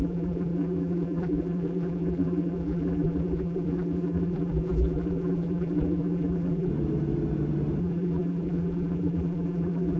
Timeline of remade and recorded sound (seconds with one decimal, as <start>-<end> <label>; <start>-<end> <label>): 0.0-6.7 remade; 6.7-7.8 recorded; 7.8-10.0 remade